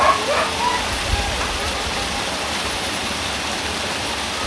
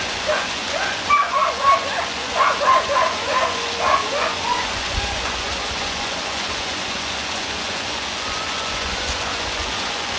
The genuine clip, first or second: first